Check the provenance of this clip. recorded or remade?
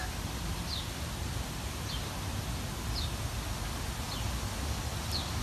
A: recorded